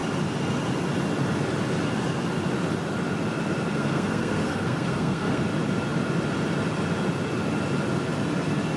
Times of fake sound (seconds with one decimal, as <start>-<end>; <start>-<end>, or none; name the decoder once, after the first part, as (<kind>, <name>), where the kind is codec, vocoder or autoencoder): 3.7-5.4 (codec, SNAC)